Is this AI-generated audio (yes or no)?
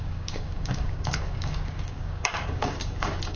yes